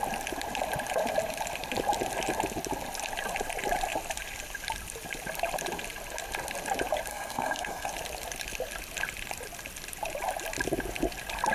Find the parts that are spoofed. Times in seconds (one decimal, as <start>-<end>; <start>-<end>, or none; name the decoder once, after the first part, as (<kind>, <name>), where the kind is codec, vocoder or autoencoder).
7.1-7.9 (codec, SNAC)